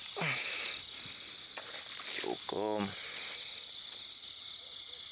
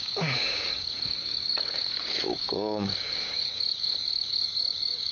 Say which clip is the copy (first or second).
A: second